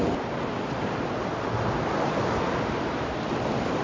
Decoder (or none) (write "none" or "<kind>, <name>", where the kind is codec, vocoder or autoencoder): none